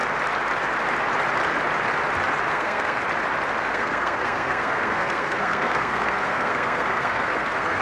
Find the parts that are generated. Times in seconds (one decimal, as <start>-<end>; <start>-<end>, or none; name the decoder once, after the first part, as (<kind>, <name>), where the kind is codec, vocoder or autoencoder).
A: 2.5-3.0 (codec, SNAC); 3.6-7.8